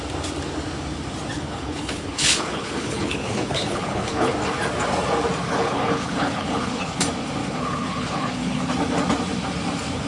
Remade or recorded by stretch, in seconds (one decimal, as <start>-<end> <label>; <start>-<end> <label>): 0.0-1.3 recorded; 1.3-4.3 remade; 4.3-5.5 recorded; 5.5-7.0 remade; 7.0-7.4 recorded; 7.4-8.7 remade; 8.7-10.1 recorded